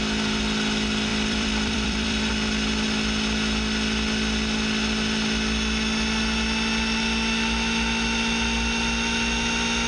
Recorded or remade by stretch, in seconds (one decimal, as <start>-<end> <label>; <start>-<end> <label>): 0.0-1.1 recorded; 1.1-2.3 remade; 2.3-9.9 recorded